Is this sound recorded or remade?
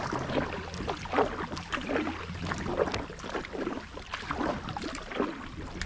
recorded